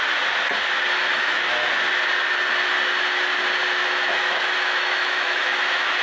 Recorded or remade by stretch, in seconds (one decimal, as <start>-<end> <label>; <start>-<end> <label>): 0.0-1.1 recorded; 1.1-1.7 remade; 1.7-3.8 recorded; 3.8-6.0 remade